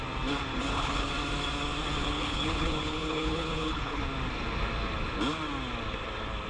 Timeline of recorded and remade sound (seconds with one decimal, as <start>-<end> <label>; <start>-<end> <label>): 0.0-0.5 recorded; 0.5-1.1 remade; 1.1-2.0 recorded; 2.0-4.0 remade; 4.0-6.5 recorded